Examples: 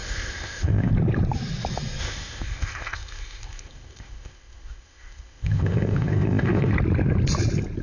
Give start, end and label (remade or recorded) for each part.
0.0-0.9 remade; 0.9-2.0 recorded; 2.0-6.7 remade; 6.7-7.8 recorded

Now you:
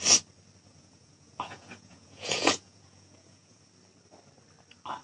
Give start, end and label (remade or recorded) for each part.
0.0-0.7 recorded; 0.7-3.7 remade; 3.7-5.0 recorded

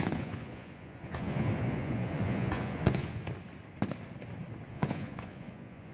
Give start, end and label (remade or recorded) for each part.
0.0-3.3 remade; 3.3-4.7 recorded; 4.7-5.9 remade

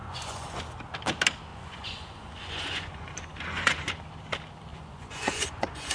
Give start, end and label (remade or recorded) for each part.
0.0-0.6 remade; 0.6-1.5 recorded; 1.5-3.9 remade; 3.9-4.7 recorded; 4.7-5.9 remade

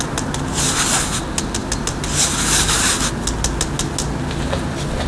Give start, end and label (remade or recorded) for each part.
0.0-5.1 recorded

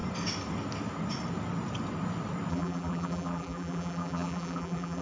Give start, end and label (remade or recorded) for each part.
0.0-2.5 recorded; 2.5-5.0 remade

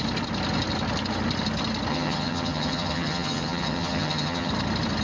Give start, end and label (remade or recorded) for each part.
0.0-1.9 recorded; 1.9-4.5 remade; 4.5-5.0 recorded